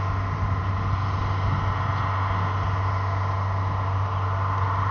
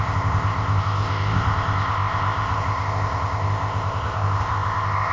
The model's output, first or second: second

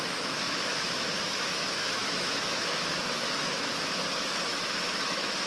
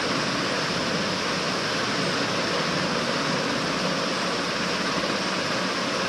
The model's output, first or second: first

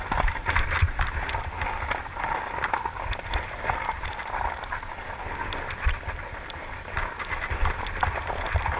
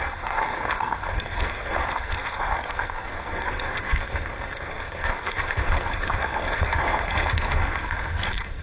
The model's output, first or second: second